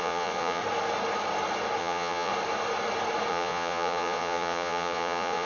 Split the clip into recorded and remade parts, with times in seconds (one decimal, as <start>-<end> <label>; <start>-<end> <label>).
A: 0.0-0.6 remade; 0.6-1.8 recorded; 1.8-2.3 remade; 2.3-3.3 recorded; 3.3-5.5 remade